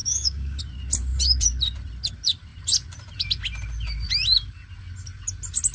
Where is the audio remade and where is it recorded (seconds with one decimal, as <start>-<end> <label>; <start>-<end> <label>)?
0.0-0.6 remade; 0.6-5.7 recorded